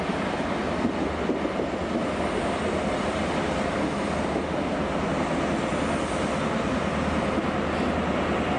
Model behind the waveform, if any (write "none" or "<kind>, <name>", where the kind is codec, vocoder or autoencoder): none